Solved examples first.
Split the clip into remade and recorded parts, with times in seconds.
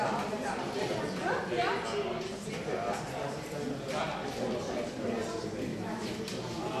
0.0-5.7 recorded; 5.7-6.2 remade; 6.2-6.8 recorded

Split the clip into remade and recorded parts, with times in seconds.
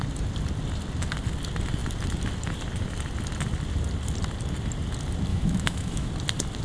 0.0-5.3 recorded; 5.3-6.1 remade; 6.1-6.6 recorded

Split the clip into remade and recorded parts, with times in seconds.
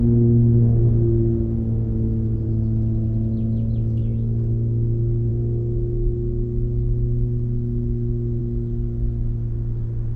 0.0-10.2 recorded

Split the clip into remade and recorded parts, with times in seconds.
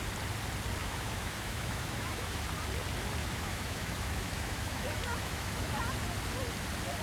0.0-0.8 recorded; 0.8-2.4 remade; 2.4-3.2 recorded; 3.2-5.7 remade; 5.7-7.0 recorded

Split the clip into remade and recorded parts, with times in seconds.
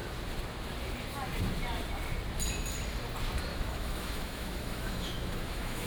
0.0-3.5 recorded; 3.5-5.9 remade